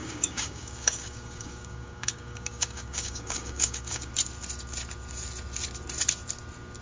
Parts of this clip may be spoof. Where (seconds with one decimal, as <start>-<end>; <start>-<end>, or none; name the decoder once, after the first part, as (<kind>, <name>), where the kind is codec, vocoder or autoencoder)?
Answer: 0.0-4.1 (codec, DAC)